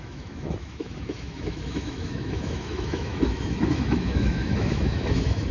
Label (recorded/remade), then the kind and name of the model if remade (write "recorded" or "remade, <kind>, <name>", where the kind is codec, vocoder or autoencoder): remade, autoencoder, DAC-VAE